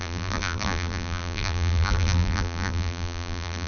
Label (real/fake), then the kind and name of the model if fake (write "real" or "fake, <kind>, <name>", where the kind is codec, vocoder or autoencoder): fake, vocoder, BigVGAN v2